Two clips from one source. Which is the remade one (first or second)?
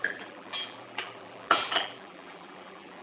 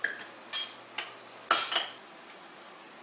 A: first